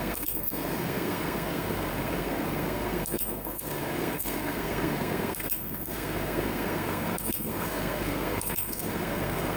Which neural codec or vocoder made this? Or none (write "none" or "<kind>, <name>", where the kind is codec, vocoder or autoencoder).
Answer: codec, SNAC